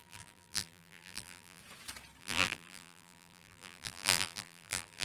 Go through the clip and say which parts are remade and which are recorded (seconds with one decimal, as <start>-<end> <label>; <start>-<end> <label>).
0.0-1.6 remade; 1.6-2.2 recorded; 2.2-5.0 remade